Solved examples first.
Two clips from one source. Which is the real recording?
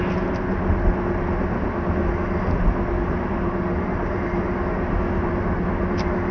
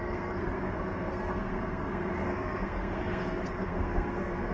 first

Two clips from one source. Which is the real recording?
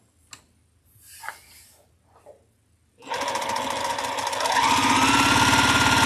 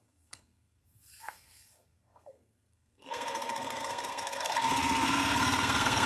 first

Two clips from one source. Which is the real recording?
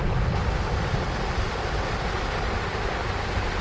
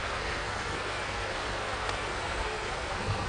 first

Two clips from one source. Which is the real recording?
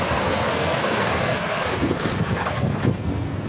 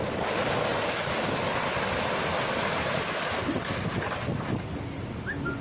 second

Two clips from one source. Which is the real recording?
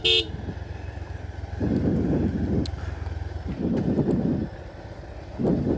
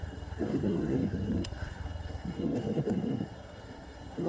first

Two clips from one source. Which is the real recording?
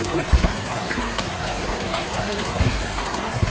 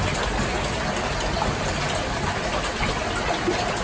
second